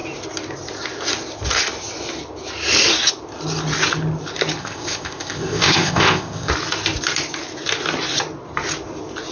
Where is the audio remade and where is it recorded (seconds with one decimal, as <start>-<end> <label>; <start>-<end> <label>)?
0.0-4.6 recorded; 4.6-6.5 remade; 6.5-9.3 recorded